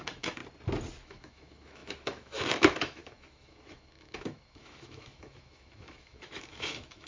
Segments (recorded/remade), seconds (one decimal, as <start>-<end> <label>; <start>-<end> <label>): 0.0-0.4 remade; 0.4-1.0 recorded; 1.0-7.1 remade